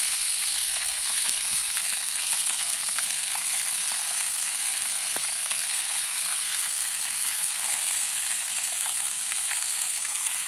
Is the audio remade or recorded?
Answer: remade